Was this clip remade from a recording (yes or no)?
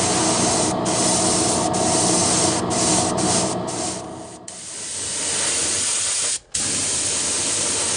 no